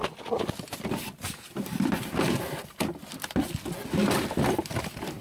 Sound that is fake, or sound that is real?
real